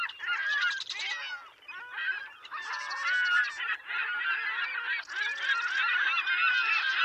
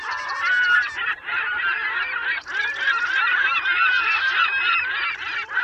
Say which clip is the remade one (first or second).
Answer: second